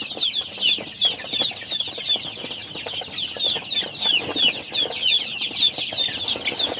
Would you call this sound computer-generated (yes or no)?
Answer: no